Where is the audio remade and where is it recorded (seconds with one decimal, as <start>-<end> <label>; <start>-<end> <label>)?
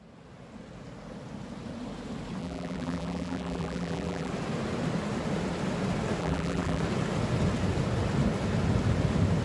0.0-2.4 recorded; 2.4-4.3 remade; 4.3-6.2 recorded; 6.2-6.8 remade; 6.8-9.4 recorded